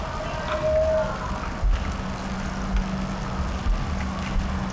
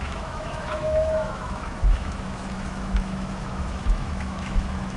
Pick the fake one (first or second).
second